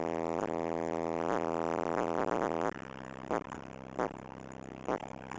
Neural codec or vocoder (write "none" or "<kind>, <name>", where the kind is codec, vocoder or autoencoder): none